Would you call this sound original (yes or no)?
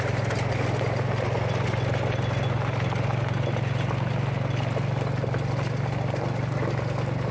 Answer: yes